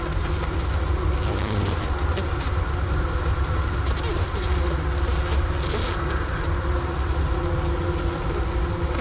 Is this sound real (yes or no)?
yes